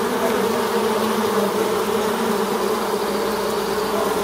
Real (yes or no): yes